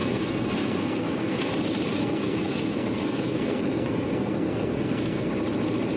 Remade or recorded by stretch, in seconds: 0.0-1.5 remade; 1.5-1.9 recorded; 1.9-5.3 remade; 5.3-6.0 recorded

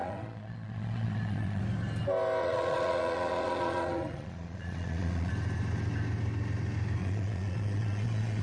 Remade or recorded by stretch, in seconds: 0.0-1.6 remade; 1.6-2.4 recorded; 2.4-5.3 remade; 5.3-7.0 recorded; 7.0-8.4 remade

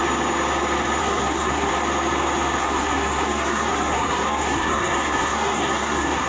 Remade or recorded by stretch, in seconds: 0.0-1.0 recorded; 1.0-1.7 remade; 1.7-2.6 recorded; 2.6-6.3 remade

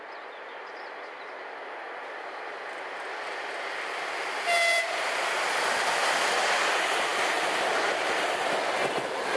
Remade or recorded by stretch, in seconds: 0.0-9.4 recorded

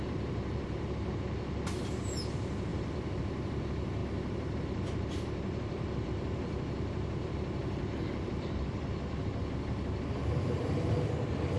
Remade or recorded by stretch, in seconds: 0.0-0.8 remade; 0.8-2.7 recorded; 2.7-3.2 remade; 3.2-4.0 recorded; 4.0-6.1 remade; 6.1-7.6 recorded; 7.6-10.9 remade; 10.9-11.6 recorded

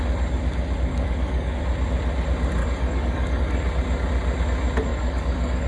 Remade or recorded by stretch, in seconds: 0.0-0.9 recorded; 0.9-1.6 remade; 1.6-2.6 recorded; 2.6-3.4 remade; 3.4-4.9 recorded; 4.9-5.7 remade

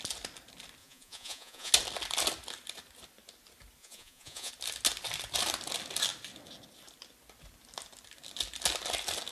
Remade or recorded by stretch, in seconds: 0.0-0.8 recorded; 0.8-1.7 remade; 1.7-3.8 recorded; 3.8-4.5 remade; 4.5-9.3 recorded